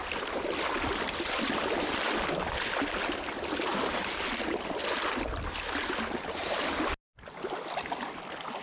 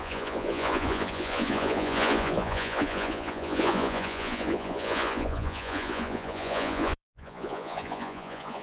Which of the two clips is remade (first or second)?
second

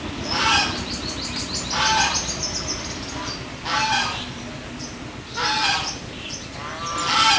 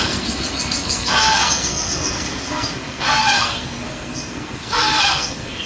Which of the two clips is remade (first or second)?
second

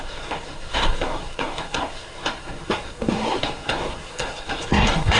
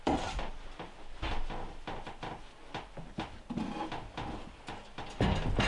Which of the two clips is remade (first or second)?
first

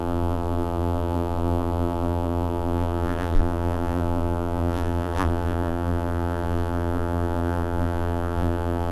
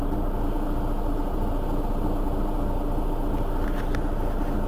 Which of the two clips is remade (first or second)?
first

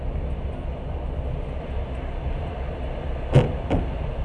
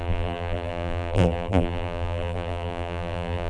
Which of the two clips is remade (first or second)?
second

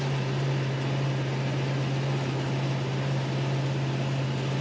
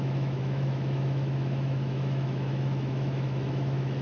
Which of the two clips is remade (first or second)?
second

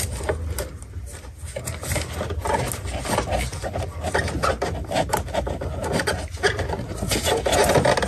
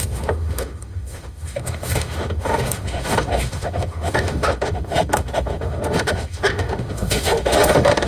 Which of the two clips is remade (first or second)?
second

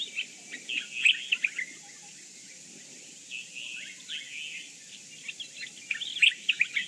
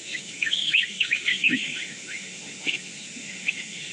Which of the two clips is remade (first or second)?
second